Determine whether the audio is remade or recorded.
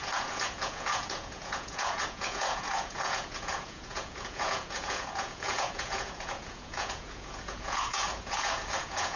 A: remade